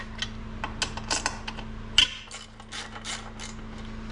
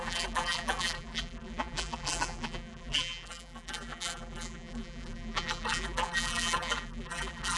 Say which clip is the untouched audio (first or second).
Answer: first